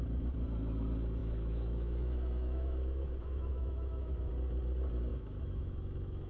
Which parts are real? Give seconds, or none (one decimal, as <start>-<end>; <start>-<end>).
0.0-1.2; 4.3-5.1